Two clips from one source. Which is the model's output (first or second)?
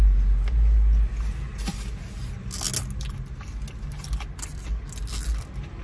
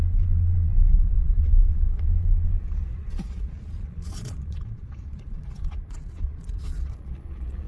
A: second